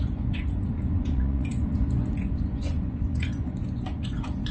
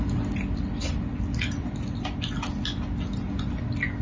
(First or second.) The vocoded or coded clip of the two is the first